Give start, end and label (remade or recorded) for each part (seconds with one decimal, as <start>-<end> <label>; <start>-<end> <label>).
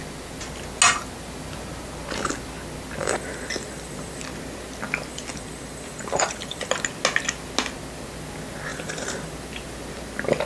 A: 0.0-3.0 recorded; 3.0-4.2 remade; 4.2-5.1 recorded; 5.1-6.7 remade; 6.7-8.7 recorded; 8.7-9.3 remade; 9.3-10.5 recorded